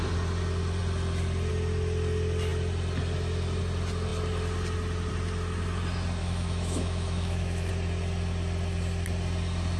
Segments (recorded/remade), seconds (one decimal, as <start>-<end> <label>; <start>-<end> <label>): 0.0-6.2 recorded; 6.2-7.7 remade; 7.7-9.8 recorded